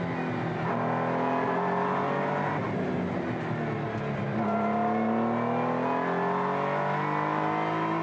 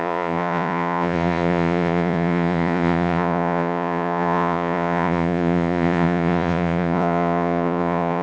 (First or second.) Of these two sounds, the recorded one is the first